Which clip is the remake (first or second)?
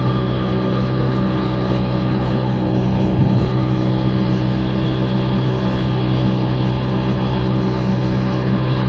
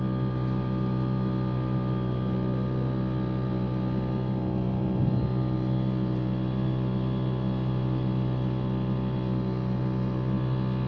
first